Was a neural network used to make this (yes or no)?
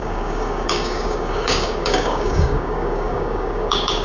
yes